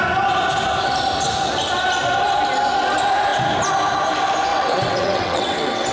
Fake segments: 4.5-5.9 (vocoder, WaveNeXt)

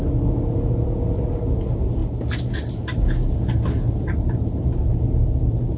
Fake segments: none

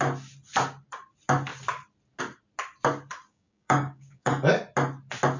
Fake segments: 3.3-4.3 (codec, DAC)

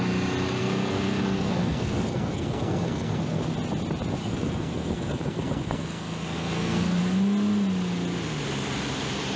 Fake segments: 0.6-3.4 (codec, SNAC); 4.2-7.0

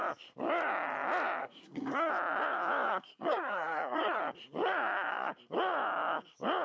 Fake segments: 1.4-2.1 (codec, SNAC); 2.9-4.2

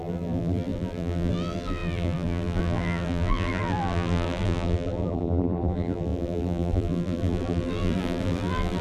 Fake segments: 0.0-8.8 (vocoder, BigVGAN v2)

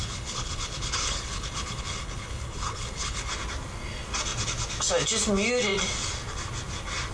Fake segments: 0.0-3.3 (codec, HILCodec)